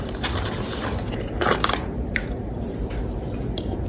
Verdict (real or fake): fake